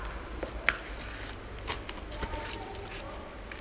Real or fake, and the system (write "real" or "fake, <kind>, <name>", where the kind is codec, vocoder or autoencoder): real